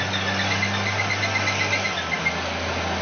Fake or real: real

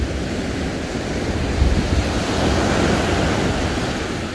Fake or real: real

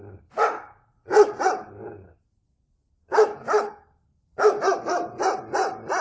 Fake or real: real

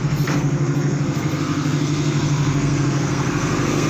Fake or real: fake